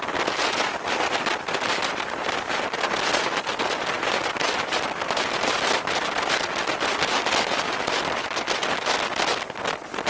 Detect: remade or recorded recorded